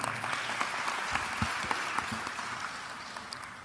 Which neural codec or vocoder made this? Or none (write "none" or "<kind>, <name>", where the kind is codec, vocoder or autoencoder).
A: none